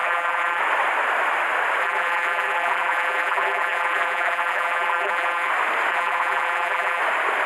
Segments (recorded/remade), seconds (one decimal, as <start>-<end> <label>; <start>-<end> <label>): 0.0-0.6 remade; 0.6-1.8 recorded; 1.8-5.5 remade; 5.5-5.9 recorded; 5.9-7.0 remade; 7.0-7.5 recorded